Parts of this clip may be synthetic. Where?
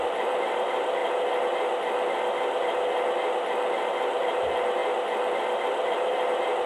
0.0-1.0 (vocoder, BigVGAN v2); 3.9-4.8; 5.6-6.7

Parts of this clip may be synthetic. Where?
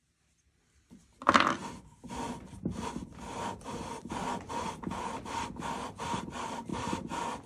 none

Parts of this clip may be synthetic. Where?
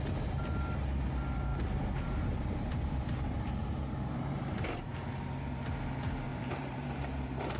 1.5-5.1 (vocoder, BigVGAN v2); 6.3-7.6